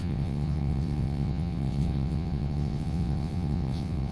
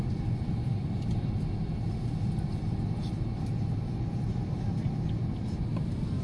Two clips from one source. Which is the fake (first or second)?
first